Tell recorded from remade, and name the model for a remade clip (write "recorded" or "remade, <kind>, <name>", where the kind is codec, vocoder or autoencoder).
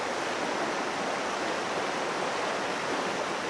recorded